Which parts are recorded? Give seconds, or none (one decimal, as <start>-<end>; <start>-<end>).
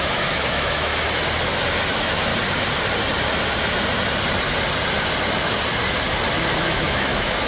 0.9-1.9; 2.3-6.6